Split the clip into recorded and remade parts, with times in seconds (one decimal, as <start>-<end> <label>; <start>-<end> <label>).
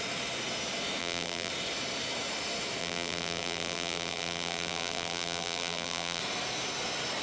0.0-1.0 recorded; 1.0-1.5 remade; 1.5-2.8 recorded; 2.8-6.2 remade; 6.2-7.2 recorded